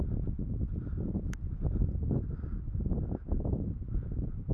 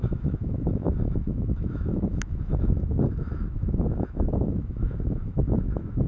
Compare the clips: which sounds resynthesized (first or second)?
second